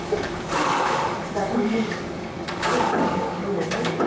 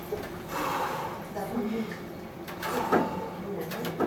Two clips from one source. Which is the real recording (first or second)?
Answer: second